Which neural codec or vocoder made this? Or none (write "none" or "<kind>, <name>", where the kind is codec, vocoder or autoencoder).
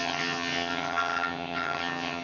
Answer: vocoder, HiFi-GAN